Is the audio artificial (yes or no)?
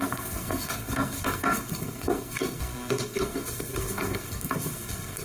yes